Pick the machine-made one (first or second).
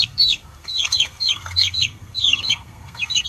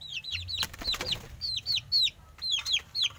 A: first